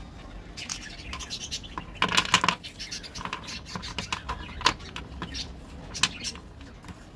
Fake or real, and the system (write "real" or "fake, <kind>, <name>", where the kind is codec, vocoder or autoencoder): real